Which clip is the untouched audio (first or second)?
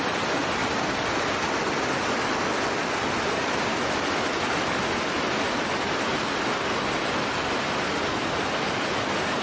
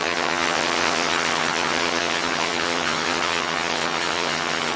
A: first